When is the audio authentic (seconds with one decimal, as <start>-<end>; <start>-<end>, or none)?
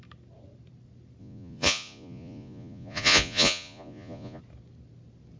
0.0-1.2; 4.4-5.4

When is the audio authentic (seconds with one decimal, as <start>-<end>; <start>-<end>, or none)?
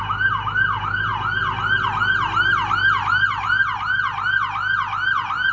0.0-5.5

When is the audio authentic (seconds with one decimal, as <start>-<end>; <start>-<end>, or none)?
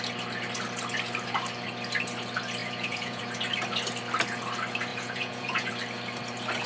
0.0-2.6; 3.2-4.9; 5.7-6.7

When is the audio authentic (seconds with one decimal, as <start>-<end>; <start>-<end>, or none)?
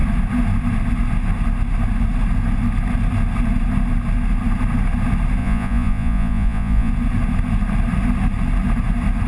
0.0-5.4; 6.9-9.3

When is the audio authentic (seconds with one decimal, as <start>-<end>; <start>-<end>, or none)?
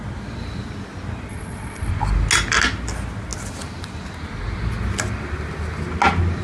0.0-1.3; 1.9-6.4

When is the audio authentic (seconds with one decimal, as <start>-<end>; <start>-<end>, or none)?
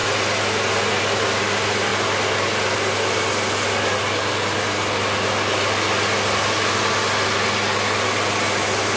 0.0-9.0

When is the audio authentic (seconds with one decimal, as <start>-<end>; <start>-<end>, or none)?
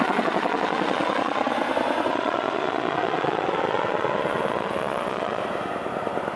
1.5-2.1; 5.4-6.4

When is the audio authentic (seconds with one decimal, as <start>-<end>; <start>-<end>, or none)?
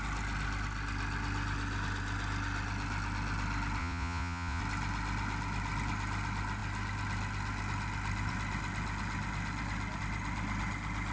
0.0-3.8; 4.6-11.1